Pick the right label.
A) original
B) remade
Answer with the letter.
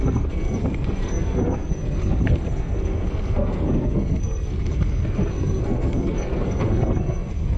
B